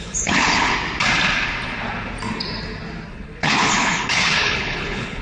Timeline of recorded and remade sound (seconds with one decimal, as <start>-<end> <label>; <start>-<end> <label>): 0.0-0.7 remade; 0.7-3.1 recorded; 3.1-5.2 remade